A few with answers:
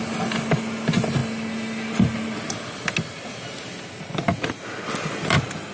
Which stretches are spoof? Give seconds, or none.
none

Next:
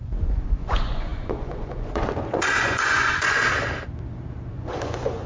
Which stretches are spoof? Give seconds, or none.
0.0-3.4 (vocoder, Vocos); 4.5-5.3

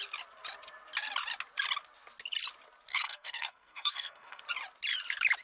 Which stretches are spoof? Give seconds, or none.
2.9-4.4 (codec, SNAC)

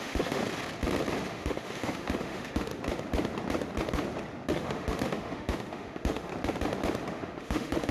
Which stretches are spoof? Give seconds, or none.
0.0-0.4 (autoencoder, DAC-VAE); 1.3-2.7; 4.5-6.3; 7.1-7.9